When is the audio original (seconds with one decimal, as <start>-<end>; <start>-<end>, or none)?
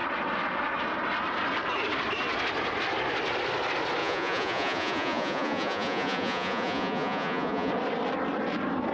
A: 0.0-4.0; 7.7-8.9